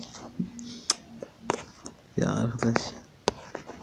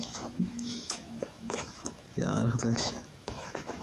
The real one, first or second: first